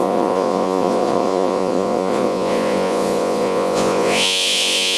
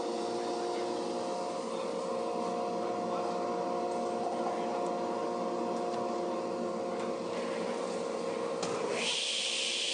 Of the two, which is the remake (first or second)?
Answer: first